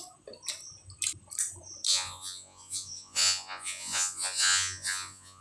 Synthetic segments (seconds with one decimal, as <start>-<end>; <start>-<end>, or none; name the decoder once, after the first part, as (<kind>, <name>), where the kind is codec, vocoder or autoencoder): 1.9-5.4 (vocoder, Vocos)